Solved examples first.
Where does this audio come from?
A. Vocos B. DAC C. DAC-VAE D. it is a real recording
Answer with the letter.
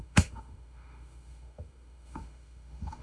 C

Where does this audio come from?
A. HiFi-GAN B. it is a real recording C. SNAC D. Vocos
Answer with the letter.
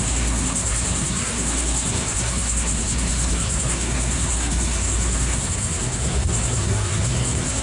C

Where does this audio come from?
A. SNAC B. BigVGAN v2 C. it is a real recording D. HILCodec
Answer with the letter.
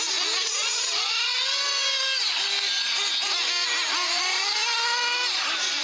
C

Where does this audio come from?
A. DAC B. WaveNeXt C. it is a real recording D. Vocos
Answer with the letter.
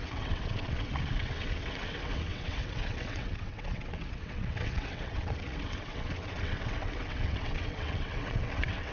B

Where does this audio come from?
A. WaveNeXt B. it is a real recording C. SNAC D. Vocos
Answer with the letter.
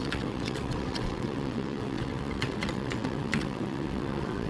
A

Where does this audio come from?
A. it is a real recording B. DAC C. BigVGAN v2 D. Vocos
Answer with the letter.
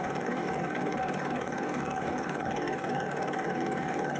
B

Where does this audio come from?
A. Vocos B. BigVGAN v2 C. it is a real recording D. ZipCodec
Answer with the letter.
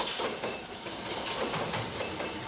C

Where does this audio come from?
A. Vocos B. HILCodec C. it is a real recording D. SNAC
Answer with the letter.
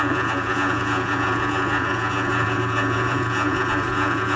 A